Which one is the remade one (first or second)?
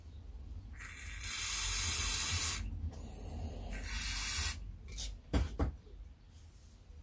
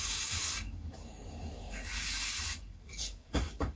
second